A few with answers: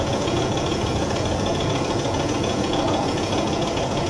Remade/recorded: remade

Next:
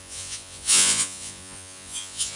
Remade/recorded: remade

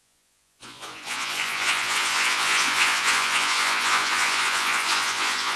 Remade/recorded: remade